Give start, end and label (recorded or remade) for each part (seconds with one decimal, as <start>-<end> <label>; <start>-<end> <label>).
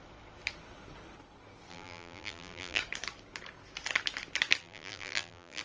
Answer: 0.0-1.7 recorded; 1.7-2.8 remade; 2.8-4.6 recorded; 4.6-5.6 remade